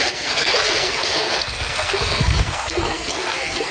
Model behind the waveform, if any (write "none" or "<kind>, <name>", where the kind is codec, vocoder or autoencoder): codec, SNAC